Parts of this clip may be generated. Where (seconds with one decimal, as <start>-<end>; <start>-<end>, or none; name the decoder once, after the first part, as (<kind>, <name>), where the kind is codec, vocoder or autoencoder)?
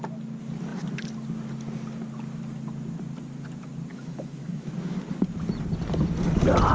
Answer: 3.9-4.7 (autoencoder, DAC-VAE)